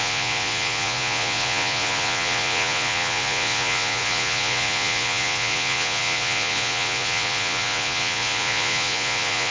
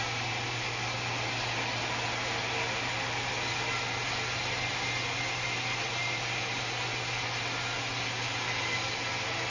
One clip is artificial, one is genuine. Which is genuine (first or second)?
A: second